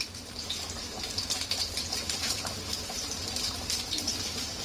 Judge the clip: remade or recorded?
remade